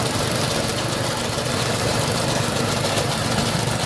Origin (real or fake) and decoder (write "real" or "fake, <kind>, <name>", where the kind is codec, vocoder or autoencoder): fake, vocoder, BigVGAN v2